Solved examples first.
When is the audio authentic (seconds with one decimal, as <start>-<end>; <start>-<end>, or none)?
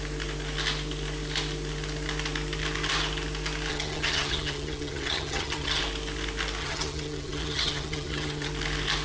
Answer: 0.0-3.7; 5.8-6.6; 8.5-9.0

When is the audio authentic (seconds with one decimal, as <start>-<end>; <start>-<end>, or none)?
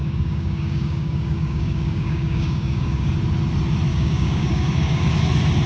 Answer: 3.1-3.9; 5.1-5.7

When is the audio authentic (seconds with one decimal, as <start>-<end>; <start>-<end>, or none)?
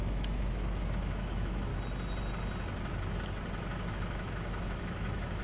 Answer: 1.7-3.9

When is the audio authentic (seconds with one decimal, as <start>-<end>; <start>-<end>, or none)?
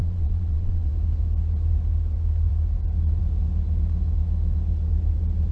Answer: 0.9-5.5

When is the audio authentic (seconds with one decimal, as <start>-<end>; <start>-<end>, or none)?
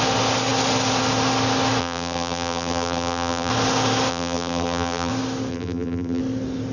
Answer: 0.0-1.8; 3.5-4.1; 5.1-5.5; 6.2-6.7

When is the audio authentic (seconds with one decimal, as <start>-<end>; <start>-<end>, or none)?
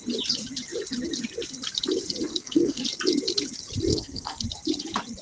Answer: 0.0-2.3; 2.8-3.9; 4.4-5.2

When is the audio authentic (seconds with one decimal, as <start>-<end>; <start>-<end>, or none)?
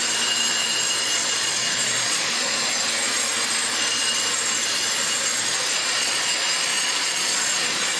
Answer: 0.0-1.2; 2.7-5.7; 6.3-6.7